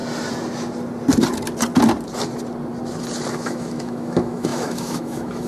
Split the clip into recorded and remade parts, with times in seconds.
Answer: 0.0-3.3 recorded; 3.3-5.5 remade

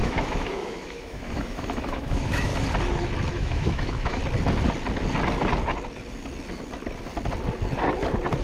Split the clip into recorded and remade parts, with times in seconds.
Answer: 0.0-2.5 remade; 2.5-3.3 recorded; 3.3-4.2 remade; 4.2-8.4 recorded

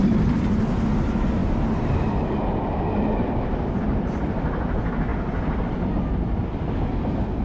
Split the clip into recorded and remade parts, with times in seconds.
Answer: 0.0-7.4 recorded

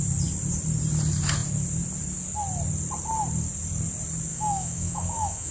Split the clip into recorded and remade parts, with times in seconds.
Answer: 0.0-4.3 recorded; 4.3-5.5 remade

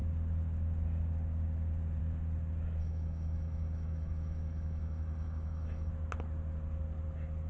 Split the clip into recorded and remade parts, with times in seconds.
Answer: 0.0-2.8 recorded; 2.8-5.9 remade; 5.9-7.5 recorded